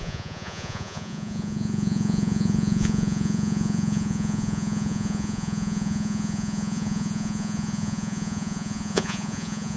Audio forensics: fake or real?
fake